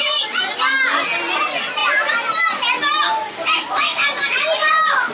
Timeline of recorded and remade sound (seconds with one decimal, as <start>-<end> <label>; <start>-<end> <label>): 0.0-5.1 recorded